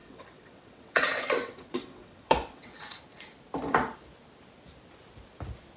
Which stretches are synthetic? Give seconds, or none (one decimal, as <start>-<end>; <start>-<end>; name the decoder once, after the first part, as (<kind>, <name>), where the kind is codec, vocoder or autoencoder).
0.0-3.0 (vocoder, WaveNeXt)

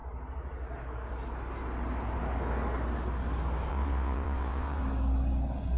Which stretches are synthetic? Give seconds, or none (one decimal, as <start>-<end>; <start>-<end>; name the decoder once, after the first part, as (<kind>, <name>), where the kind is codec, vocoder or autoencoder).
3.7-4.8 (vocoder, WaveNeXt)

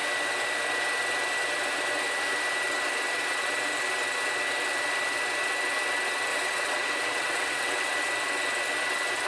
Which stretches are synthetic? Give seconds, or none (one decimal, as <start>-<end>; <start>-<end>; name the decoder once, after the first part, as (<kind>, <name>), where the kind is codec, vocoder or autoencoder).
6.3-7.9 (vocoder, WaveNeXt)

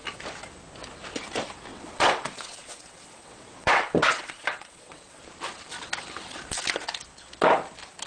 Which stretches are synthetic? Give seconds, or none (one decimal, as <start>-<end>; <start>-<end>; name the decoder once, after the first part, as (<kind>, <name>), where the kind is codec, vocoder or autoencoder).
1.7-5.2 (vocoder, WaveNeXt)

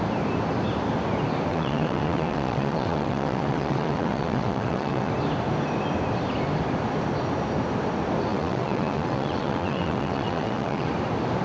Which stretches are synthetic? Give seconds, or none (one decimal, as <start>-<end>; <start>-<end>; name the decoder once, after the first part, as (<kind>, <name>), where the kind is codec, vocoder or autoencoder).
1.5-5.1 (vocoder, WaveNeXt); 8.3-10.9

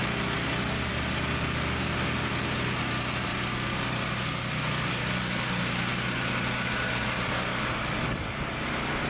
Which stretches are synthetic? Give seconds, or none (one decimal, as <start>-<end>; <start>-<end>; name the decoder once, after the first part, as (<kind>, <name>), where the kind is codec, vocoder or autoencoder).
none

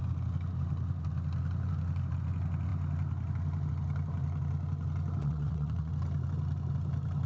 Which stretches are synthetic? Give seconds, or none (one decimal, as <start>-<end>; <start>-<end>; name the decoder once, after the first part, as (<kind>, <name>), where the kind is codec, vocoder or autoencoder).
5.2-5.9 (vocoder, WaveNeXt)